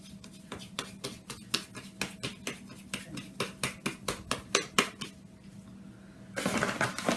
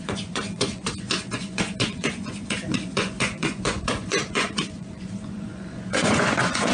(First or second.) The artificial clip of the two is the second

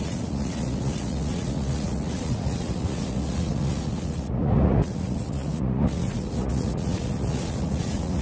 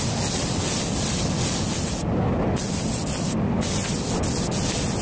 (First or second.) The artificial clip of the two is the first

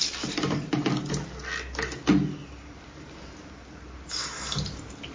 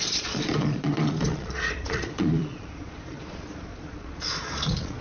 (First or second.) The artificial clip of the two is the second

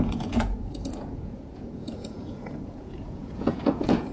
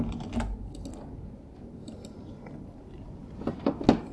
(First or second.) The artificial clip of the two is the first